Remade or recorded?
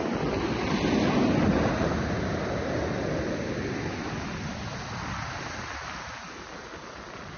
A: recorded